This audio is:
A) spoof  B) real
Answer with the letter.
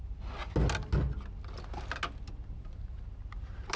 B